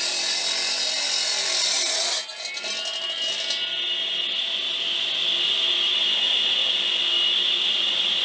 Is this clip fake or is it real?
real